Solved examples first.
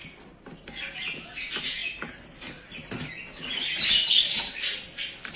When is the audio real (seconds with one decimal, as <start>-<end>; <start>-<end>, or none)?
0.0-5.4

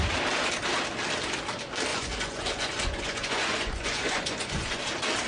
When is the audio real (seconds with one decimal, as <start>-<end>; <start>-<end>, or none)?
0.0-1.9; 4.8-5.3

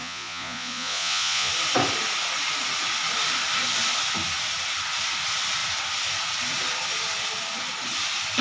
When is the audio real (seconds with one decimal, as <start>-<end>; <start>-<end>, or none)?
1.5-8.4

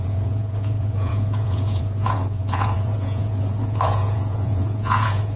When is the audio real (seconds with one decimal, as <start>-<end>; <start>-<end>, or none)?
none

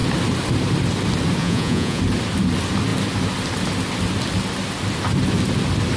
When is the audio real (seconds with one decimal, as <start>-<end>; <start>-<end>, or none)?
0.0-1.4; 2.0-6.0

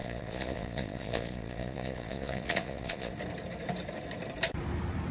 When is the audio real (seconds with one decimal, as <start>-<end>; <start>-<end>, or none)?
3.1-5.1